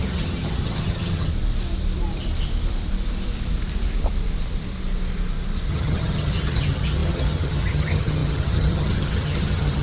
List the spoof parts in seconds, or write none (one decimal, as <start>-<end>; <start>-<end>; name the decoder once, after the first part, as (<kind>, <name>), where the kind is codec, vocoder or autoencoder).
0.0-1.3 (vocoder, HiFi-GAN); 5.7-9.8